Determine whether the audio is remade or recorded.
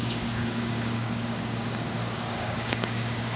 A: remade